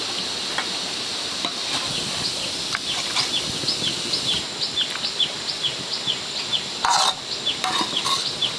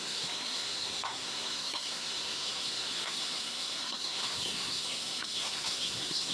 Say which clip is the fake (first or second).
second